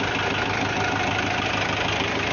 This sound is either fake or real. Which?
real